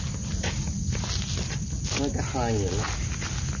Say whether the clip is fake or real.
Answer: real